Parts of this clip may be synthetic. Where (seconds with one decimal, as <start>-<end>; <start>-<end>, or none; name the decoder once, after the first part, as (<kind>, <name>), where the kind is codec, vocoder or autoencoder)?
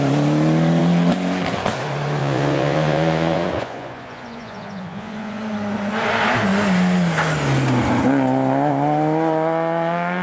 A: 2.2-5.4 (vocoder, Vocos)